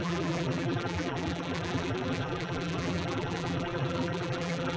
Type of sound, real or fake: fake